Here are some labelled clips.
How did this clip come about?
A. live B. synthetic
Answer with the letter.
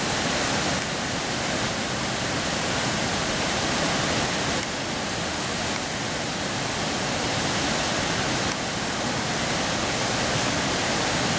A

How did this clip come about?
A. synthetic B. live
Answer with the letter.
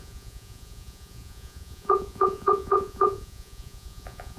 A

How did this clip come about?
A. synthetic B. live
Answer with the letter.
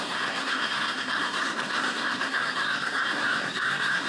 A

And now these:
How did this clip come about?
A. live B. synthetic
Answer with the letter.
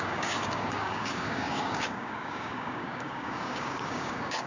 B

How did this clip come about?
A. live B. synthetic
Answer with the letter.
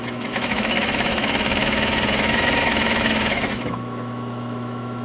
B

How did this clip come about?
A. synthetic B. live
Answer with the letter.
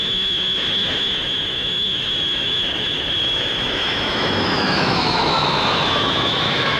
A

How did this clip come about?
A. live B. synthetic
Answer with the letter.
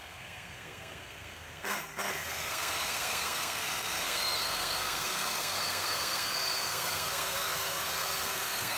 B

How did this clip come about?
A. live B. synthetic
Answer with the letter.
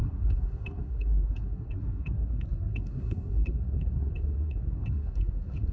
B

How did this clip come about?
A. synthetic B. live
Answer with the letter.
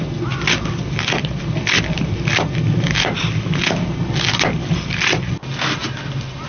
B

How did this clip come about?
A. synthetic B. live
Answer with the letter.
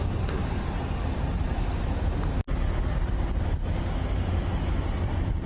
B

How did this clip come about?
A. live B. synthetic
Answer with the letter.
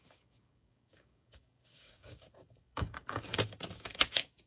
B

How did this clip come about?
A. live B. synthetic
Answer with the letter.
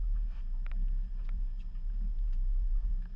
B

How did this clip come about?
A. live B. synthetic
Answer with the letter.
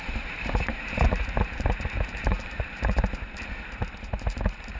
B